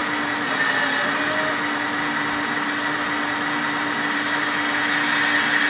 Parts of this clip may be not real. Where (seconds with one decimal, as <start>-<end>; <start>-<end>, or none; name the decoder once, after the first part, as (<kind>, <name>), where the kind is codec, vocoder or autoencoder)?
none